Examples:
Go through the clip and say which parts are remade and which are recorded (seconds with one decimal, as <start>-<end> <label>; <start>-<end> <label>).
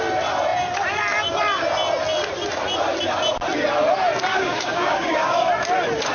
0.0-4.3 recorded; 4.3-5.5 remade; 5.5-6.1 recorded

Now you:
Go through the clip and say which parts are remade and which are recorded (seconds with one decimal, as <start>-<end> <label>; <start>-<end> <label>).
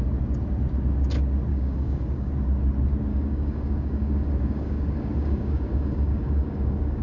0.0-1.5 recorded; 1.5-2.3 remade; 2.3-3.1 recorded; 3.1-7.0 remade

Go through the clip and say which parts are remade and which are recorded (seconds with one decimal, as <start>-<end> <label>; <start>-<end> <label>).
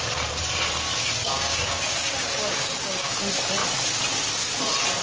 0.0-1.2 recorded; 1.2-3.2 remade; 3.2-5.0 recorded